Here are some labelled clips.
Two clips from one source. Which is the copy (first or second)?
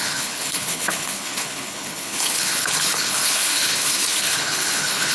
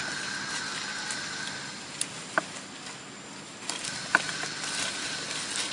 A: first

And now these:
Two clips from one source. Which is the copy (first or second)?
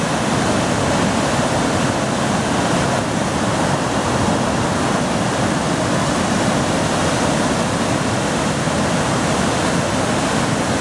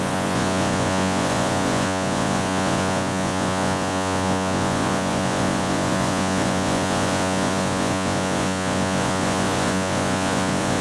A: second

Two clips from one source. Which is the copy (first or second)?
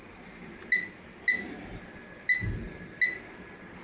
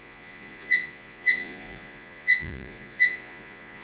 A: second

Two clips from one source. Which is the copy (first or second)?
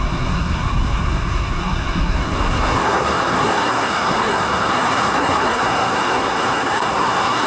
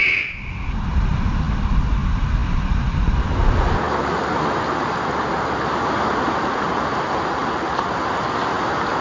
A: first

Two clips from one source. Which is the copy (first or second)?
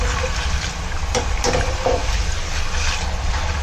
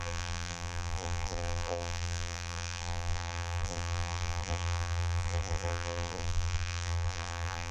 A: second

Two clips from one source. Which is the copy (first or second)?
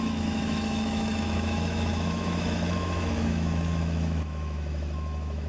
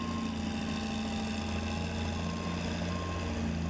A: first